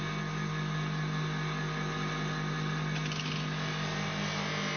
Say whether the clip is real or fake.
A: real